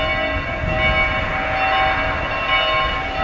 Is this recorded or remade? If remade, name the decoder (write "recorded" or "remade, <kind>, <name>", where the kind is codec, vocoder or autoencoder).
recorded